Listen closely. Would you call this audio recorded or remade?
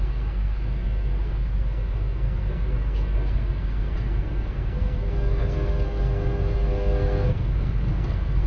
remade